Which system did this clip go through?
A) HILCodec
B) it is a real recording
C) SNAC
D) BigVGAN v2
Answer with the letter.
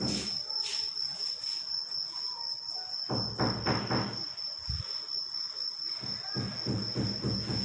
B